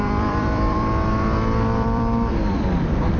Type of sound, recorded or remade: remade